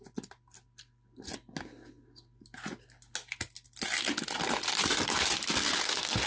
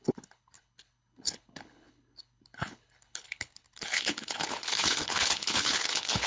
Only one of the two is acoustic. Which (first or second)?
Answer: first